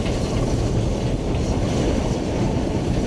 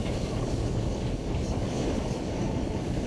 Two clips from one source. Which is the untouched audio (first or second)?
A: first